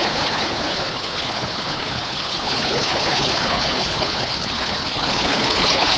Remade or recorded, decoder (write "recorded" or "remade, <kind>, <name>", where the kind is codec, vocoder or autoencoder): remade, codec, HILCodec